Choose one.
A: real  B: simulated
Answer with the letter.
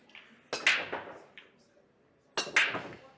A